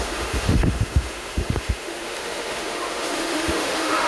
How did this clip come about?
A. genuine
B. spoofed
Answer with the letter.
B